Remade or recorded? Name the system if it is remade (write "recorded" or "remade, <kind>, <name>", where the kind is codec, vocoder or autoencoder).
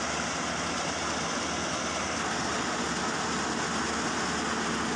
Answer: recorded